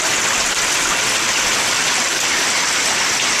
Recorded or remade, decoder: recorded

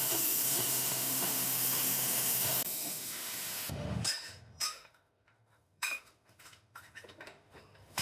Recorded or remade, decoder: remade, autoencoder, DAC-VAE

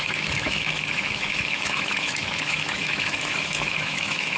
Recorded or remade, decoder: remade, autoencoder, DAC-VAE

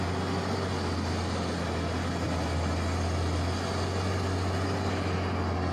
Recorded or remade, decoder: recorded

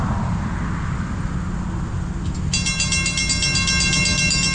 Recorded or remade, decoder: recorded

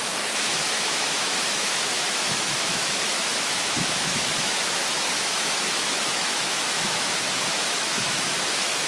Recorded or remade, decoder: remade, autoencoder, DAC-VAE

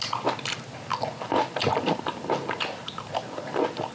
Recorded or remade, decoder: recorded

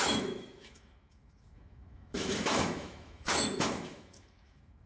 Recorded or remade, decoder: remade, autoencoder, DAC-VAE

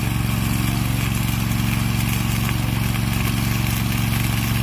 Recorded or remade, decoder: recorded